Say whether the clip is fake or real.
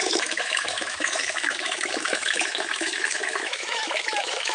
fake